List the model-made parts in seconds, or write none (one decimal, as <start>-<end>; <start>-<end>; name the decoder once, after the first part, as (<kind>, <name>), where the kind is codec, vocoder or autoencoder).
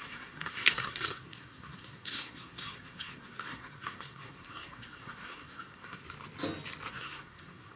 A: 0.0-6.0 (codec, SNAC); 6.9-7.8